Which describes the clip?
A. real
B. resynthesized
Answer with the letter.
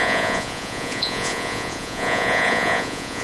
B